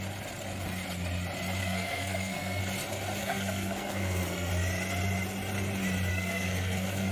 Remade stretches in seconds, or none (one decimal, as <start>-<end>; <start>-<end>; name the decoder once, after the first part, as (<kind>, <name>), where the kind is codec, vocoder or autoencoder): 1.6-2.6 (codec, SNAC); 3.2-4.5; 6.1-7.1